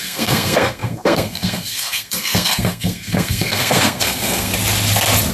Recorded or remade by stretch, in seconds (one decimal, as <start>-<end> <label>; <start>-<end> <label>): 0.0-4.5 remade; 4.5-5.3 recorded